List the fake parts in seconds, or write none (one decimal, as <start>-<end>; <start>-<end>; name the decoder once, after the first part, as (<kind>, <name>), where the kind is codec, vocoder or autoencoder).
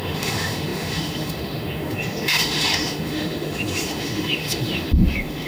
0.0-5.5 (autoencoder, DAC-VAE)